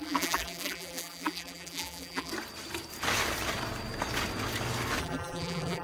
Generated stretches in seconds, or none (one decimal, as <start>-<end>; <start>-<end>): 0.0-2.3; 5.0-5.8